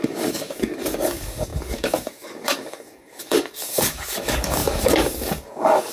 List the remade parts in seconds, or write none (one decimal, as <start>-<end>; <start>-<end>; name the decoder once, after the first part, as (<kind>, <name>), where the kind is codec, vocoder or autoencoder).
0.0-5.9 (codec, DAC)